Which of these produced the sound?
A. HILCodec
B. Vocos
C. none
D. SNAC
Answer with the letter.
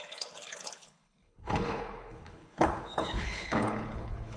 A